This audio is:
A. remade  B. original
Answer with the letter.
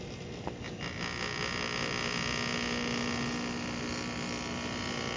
B